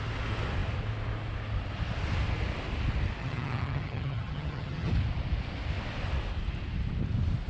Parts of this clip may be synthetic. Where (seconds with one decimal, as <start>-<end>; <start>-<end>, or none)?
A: 3.2-4.9